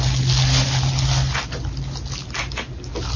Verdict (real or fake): real